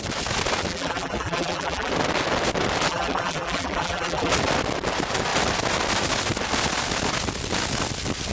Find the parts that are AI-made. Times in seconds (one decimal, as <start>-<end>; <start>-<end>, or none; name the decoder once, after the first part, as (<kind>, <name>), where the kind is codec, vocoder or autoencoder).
0.7-1.9 (vocoder, BigVGAN v2); 2.9-4.3